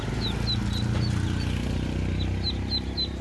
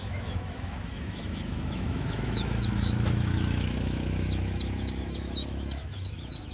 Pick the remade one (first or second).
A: second